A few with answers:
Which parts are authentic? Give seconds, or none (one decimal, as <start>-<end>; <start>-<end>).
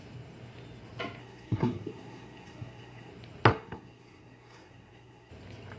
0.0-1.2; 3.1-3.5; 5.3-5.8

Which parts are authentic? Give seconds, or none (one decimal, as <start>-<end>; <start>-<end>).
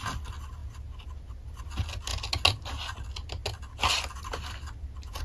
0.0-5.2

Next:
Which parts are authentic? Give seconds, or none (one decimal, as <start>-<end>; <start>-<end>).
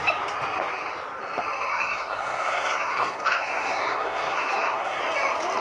0.0-1.7; 5.0-5.6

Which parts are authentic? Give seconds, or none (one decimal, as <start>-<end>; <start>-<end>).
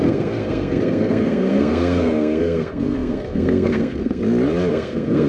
4.2-4.7